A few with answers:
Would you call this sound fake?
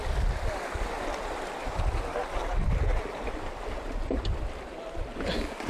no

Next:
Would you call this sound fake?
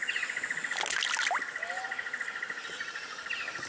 no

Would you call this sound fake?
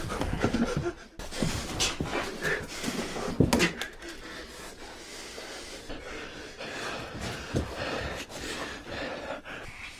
no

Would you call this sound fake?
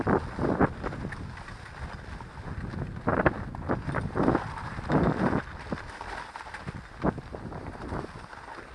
no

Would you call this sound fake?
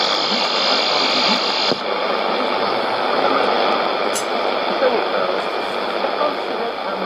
no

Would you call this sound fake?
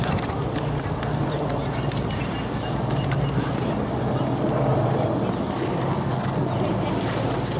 yes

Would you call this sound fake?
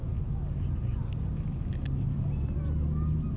no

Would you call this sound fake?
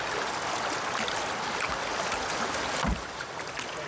no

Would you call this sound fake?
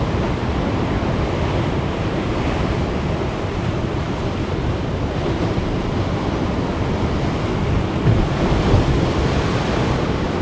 yes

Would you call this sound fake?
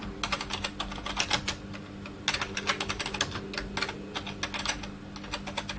no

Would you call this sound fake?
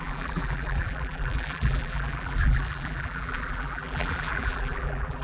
yes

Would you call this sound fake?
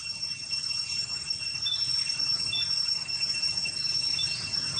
yes